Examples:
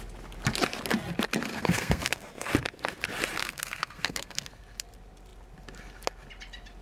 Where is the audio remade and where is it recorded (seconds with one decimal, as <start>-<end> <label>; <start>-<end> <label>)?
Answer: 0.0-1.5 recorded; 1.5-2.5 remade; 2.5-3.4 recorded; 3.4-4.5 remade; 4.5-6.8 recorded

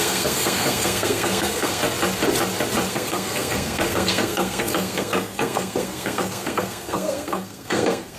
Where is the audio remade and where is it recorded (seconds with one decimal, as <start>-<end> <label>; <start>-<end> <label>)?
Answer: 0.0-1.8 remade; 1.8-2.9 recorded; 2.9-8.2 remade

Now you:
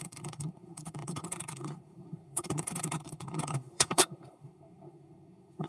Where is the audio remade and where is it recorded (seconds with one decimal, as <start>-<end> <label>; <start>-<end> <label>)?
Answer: 0.0-5.7 remade

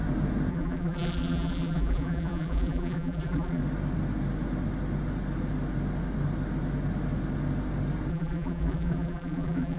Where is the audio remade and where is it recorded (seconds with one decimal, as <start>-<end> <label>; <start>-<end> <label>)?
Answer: 0.0-0.5 recorded; 0.5-3.6 remade; 3.6-8.1 recorded; 8.1-9.8 remade

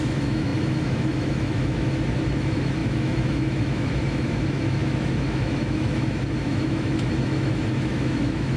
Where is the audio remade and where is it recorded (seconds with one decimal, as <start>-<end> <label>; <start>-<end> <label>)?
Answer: 0.0-8.6 remade

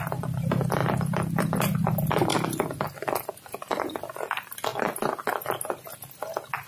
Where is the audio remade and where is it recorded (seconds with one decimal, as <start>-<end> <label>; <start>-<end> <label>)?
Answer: 0.0-0.8 recorded; 0.8-1.6 remade; 1.6-2.3 recorded; 2.3-3.3 remade; 3.3-6.7 recorded